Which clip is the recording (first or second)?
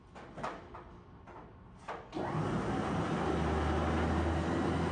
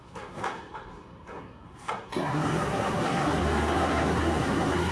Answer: first